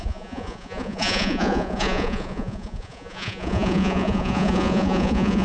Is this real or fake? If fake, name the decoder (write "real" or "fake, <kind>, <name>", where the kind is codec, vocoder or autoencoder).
fake, vocoder, Vocos